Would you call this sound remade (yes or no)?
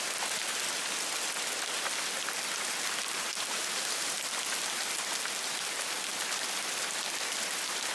no